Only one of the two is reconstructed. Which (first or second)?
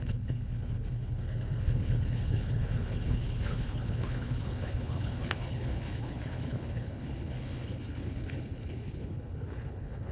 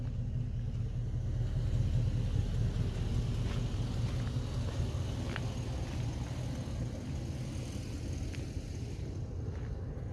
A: first